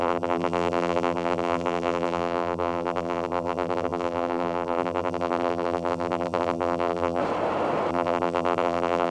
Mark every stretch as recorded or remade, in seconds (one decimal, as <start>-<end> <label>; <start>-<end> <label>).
0.0-7.2 remade; 7.2-7.9 recorded; 7.9-9.1 remade